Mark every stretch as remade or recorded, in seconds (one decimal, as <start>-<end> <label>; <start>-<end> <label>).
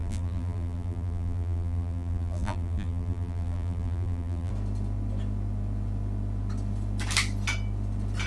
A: 0.0-4.5 remade; 4.5-8.3 recorded